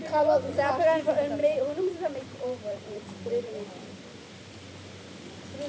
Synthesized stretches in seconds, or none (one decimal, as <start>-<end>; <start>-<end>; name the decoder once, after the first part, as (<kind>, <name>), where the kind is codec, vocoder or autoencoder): 1.4-3.5 (vocoder, BigVGAN v2)